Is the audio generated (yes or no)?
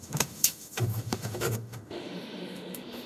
yes